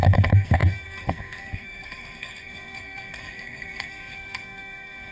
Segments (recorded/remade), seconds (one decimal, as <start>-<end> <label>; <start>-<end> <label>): 0.0-5.1 remade